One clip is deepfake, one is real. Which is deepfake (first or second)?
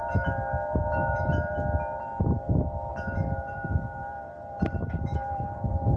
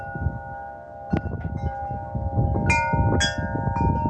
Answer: first